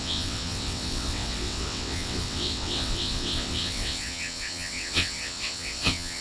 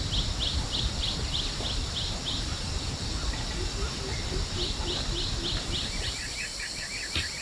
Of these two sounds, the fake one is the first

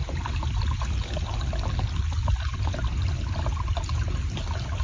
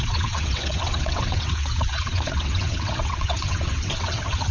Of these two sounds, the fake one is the second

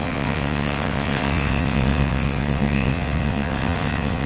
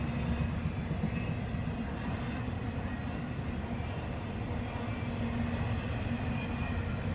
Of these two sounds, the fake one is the first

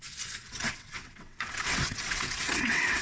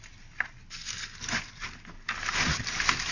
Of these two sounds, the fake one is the first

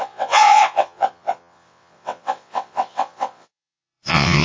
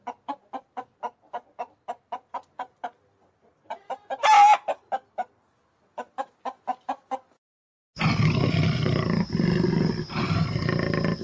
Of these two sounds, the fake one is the first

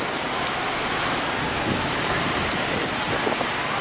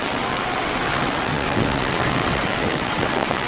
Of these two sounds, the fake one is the second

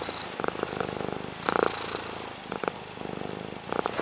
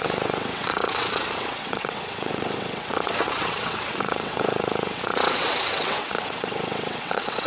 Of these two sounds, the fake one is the second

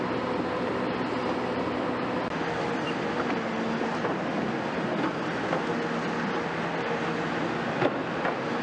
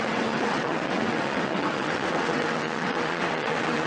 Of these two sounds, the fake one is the second